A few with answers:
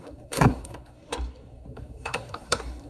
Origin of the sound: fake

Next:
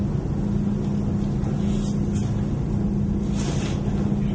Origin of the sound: real